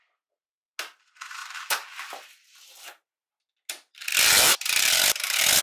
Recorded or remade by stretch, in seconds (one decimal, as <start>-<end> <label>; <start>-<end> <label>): 0.0-1.4 recorded; 1.4-3.4 remade; 3.4-5.6 recorded